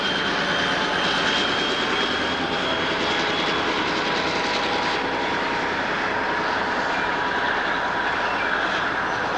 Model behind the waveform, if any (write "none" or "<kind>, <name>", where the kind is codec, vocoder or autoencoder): none